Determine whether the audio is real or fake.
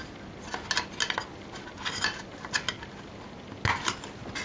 real